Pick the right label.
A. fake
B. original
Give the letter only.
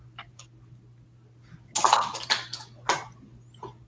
B